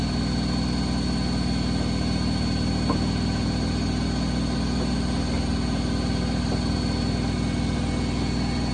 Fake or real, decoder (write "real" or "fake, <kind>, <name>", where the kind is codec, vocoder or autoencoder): real